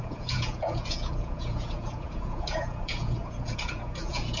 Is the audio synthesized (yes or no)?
yes